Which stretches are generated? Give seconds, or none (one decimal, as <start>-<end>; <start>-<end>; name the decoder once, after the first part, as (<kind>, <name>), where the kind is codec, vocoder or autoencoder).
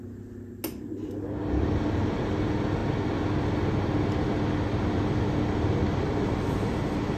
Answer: none